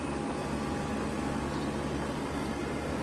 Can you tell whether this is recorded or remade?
recorded